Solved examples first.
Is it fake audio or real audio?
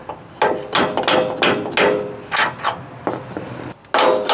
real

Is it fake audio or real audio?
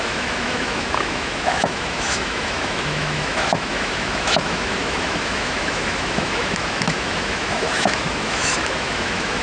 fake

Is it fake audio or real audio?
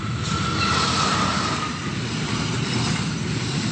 real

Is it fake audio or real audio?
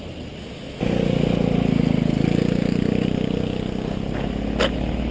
real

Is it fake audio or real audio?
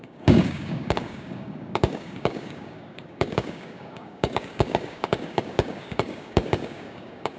fake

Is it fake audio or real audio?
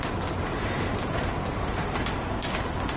real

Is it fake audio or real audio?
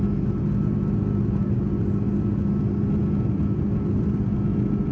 real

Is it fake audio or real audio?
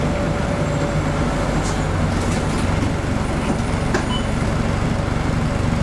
real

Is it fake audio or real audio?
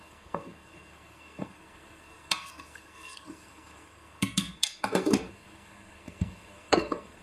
fake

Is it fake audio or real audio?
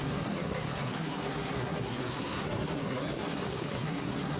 fake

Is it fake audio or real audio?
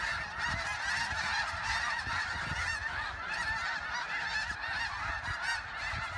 real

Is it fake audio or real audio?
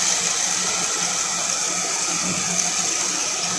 real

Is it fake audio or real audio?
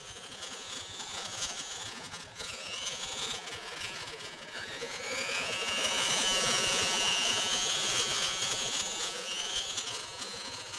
fake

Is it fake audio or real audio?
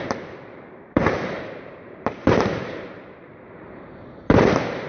fake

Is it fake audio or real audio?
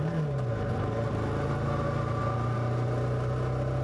real